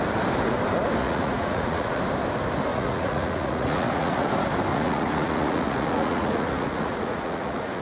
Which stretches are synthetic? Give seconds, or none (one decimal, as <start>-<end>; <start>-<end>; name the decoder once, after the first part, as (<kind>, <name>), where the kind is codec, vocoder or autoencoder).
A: 1.0-2.0 (vocoder, Vocos); 2.7-4.3; 4.7-7.8